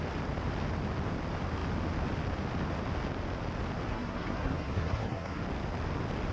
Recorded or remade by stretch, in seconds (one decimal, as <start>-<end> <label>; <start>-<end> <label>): 0.0-3.9 recorded; 3.9-5.4 remade; 5.4-6.3 recorded